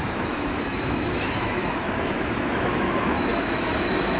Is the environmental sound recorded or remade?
remade